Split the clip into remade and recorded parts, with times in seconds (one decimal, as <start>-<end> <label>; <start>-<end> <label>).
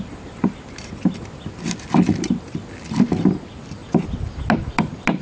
0.0-5.2 recorded